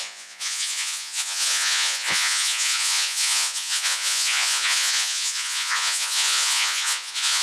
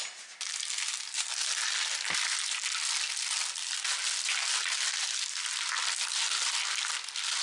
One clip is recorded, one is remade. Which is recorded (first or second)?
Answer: second